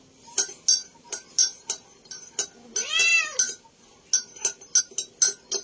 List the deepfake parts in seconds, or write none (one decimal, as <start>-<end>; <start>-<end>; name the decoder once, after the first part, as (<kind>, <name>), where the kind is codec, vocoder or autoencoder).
none